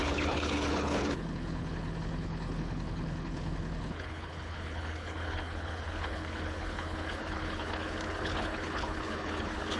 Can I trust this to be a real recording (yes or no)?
no